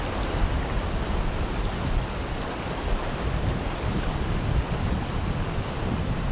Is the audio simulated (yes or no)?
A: no